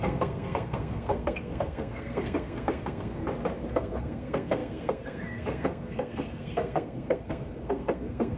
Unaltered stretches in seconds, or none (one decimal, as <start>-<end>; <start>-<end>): 3.2-3.7